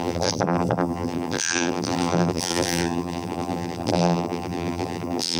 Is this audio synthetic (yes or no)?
yes